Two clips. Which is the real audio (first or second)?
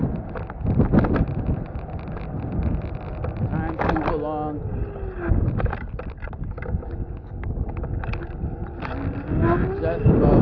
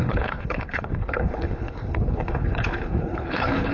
first